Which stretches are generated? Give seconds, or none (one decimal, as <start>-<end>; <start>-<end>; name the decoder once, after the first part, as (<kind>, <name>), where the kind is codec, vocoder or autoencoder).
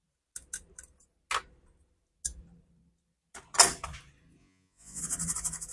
4.4-5.0 (vocoder, Vocos)